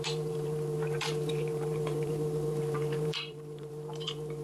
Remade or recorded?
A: remade